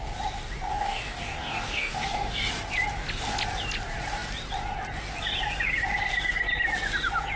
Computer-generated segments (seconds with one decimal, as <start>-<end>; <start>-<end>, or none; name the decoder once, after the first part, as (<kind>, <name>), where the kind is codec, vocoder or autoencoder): 0.7-2.5 (codec, DAC)